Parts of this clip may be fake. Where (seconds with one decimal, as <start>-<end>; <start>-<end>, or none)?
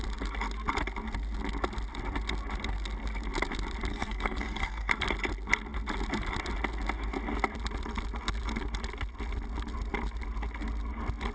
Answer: 3.9-4.9